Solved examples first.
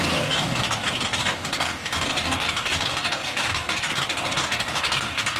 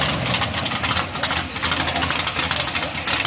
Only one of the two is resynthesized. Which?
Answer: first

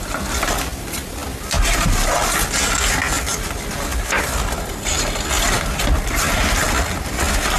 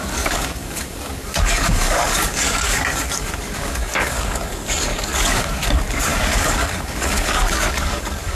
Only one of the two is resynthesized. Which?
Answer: second